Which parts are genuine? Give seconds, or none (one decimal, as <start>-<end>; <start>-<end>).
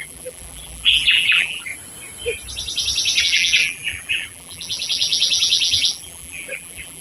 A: 1.7-3.2